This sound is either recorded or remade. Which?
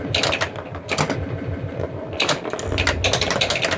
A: recorded